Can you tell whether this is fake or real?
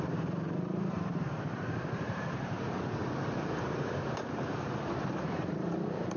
fake